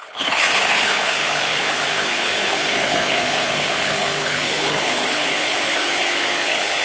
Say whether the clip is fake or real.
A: fake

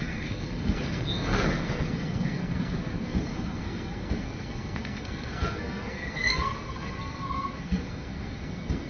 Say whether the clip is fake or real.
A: fake